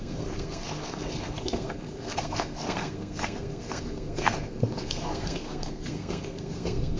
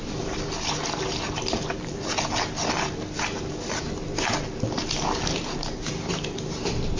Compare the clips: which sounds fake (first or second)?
first